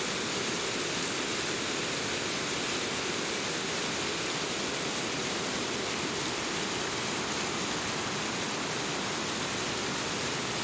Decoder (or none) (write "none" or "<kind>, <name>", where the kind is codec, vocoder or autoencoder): none